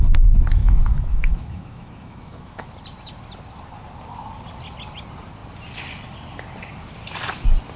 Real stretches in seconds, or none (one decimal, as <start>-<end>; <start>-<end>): 0.0-0.6; 2.7-7.8